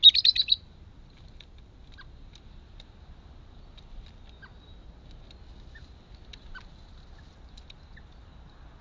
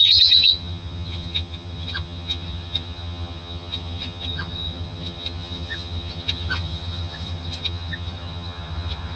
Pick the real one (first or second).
first